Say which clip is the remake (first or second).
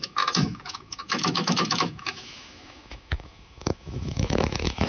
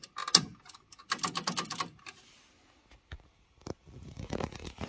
first